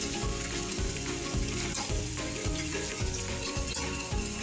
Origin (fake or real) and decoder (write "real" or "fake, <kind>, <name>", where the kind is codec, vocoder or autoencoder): fake, vocoder, Vocos